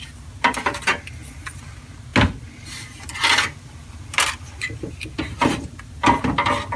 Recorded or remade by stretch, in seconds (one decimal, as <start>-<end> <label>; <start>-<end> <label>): 0.0-6.8 recorded